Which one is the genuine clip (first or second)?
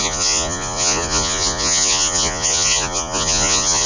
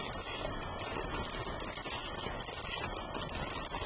second